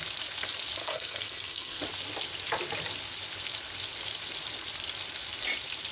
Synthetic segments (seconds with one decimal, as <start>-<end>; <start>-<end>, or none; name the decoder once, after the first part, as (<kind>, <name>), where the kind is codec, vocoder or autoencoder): 0.8-1.8 (codec, SNAC)